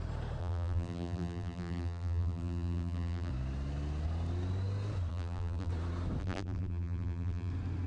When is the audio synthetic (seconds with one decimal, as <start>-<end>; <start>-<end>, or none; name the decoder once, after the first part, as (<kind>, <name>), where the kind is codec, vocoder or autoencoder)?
0.4-3.3 (vocoder, BigVGAN v2); 5.1-5.7; 6.2-7.5